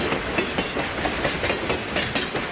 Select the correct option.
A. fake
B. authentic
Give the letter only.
B